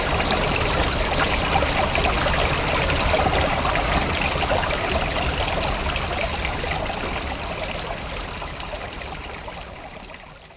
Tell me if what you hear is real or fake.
real